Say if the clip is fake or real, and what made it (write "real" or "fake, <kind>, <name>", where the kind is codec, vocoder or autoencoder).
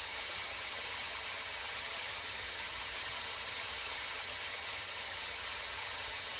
fake, vocoder, HiFi-GAN